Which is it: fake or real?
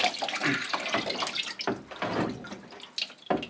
real